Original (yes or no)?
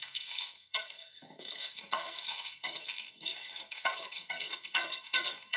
no